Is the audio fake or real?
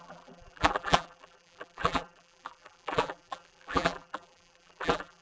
fake